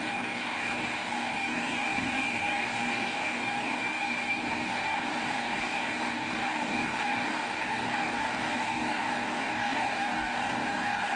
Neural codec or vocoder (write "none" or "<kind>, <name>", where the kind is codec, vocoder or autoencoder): codec, DAC